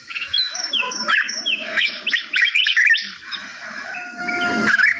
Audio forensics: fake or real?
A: fake